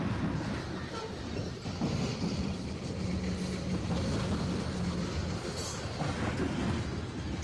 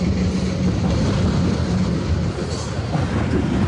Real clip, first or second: first